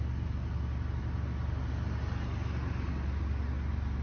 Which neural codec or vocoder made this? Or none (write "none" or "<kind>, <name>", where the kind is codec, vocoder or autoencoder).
none